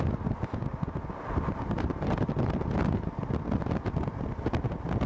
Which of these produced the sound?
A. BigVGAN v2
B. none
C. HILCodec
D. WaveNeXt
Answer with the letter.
B